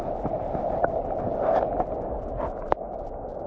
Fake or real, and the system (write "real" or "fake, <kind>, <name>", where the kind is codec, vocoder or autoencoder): real